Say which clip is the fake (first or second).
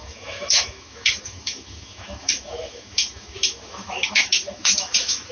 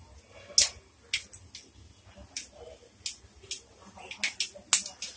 first